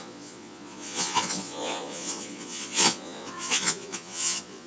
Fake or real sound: fake